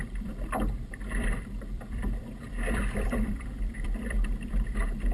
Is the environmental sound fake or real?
fake